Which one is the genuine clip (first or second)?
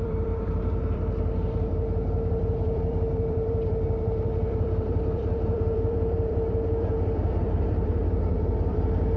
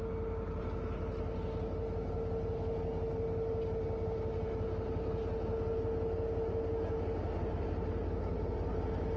second